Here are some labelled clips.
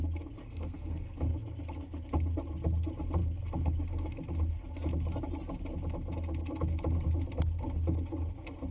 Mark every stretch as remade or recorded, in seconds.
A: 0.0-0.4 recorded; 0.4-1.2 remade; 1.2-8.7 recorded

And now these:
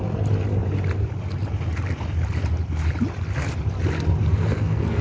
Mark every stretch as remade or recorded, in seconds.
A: 0.0-4.3 recorded; 4.3-5.0 remade

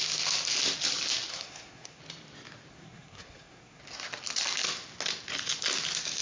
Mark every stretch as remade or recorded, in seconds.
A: 0.0-1.3 recorded; 1.3-2.0 remade; 2.0-2.7 recorded; 2.7-3.8 remade; 3.8-6.2 recorded

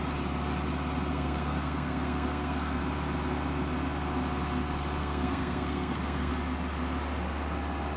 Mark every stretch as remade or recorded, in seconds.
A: 0.0-1.1 recorded; 1.1-2.8 remade; 2.8-5.0 recorded; 5.0-6.3 remade; 6.3-8.0 recorded

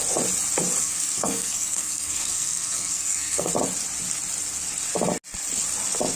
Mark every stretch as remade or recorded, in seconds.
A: 0.0-0.8 recorded; 0.8-3.5 remade; 3.5-6.2 recorded

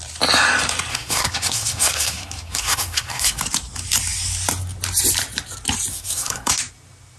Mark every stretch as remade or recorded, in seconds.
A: 0.0-0.9 recorded; 0.9-3.4 remade; 3.4-5.9 recorded; 5.9-6.5 remade; 6.5-7.2 recorded

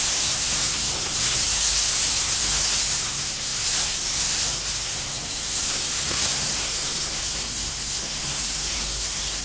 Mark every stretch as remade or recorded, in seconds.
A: 0.0-9.4 remade